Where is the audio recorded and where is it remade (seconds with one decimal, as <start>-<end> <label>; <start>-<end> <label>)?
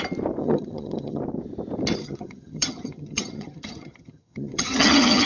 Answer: 0.0-0.4 recorded; 0.4-1.2 remade; 1.2-2.0 recorded; 2.0-5.3 remade